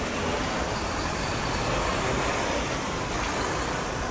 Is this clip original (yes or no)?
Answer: yes